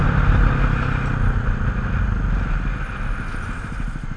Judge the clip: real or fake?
real